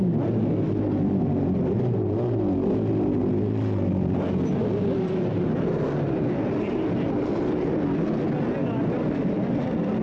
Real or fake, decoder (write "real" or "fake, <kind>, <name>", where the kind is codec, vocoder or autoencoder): real